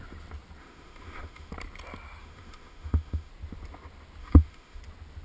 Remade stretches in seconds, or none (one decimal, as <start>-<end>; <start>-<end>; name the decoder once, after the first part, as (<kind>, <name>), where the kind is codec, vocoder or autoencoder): 0.6-1.5 (autoencoder, DAC-VAE); 2.2-3.3; 4.2-4.8